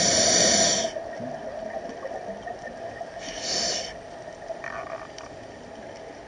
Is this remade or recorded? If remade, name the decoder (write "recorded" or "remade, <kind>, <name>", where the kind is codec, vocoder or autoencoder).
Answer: recorded